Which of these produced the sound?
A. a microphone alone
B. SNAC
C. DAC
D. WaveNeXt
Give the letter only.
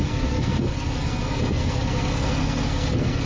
B